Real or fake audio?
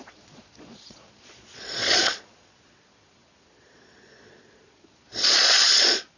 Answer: fake